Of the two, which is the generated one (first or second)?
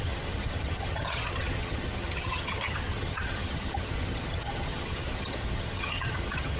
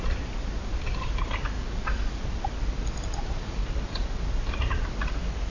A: first